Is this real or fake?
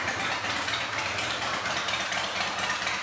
fake